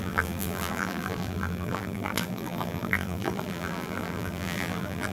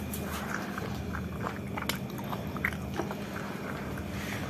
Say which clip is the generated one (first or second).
first